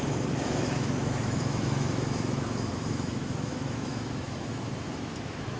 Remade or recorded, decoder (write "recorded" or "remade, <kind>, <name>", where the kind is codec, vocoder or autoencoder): remade, autoencoder, DAC-VAE